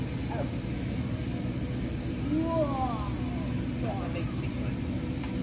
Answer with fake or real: real